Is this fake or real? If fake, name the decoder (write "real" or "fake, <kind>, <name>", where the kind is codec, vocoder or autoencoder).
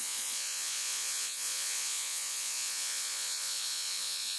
fake, vocoder, Vocos